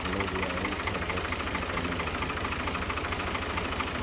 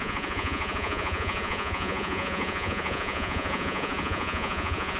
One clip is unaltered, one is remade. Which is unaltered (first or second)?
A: first